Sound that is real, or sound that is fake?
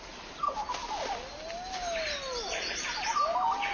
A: real